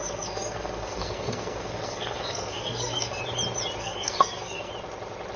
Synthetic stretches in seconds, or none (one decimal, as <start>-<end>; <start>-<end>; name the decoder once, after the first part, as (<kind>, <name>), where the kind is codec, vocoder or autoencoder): 0.0-3.2 (codec, SNAC); 3.8-4.7